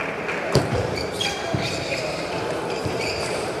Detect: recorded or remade remade